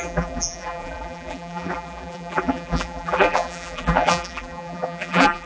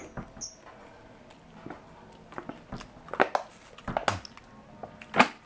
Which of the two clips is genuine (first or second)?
second